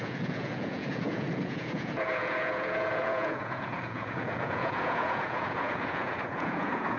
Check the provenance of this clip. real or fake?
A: fake